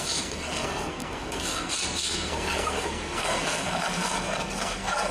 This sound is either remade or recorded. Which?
remade